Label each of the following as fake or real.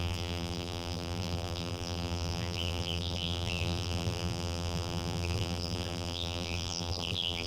fake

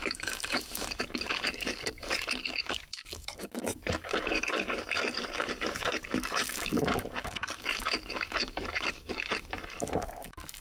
fake